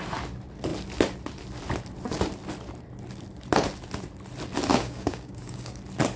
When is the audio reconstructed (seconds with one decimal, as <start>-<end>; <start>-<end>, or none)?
4.7-5.8